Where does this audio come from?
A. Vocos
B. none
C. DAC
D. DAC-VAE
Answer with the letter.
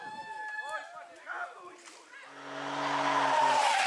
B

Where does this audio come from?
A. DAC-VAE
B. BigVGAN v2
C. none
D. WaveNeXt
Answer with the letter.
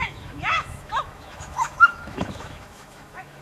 A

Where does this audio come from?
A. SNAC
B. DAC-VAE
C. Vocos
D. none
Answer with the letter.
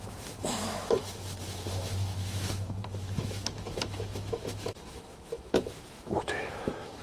B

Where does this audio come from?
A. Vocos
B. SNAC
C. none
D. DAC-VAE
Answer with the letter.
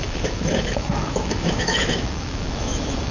D